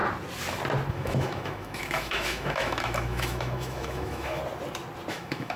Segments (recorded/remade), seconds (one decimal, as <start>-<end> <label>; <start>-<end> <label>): 0.0-0.9 recorded; 0.9-4.4 remade; 4.4-5.1 recorded; 5.1-5.6 remade